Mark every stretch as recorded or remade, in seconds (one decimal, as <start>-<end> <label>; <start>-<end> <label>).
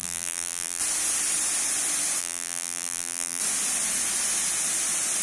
0.0-0.8 remade; 0.8-2.2 recorded; 2.2-3.4 remade; 3.4-5.2 recorded